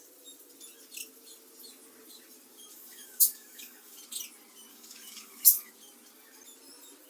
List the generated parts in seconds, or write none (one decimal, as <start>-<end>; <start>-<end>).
2.7-4.0; 4.7-5.7